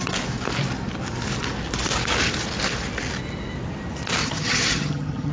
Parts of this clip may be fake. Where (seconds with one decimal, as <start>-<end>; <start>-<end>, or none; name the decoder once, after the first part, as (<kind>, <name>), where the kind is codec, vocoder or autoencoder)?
4.2-5.3 (vocoder, HiFi-GAN)